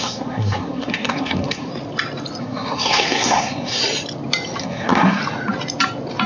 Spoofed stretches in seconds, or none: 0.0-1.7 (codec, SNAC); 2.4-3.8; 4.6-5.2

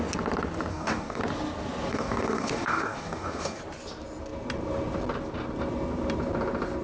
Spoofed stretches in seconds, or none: 0.7-1.2 (codec, DAC); 1.9-3.6

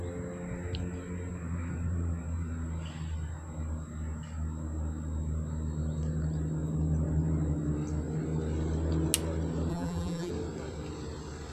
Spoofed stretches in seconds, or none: 9.7-10.3 (vocoder, BigVGAN v2)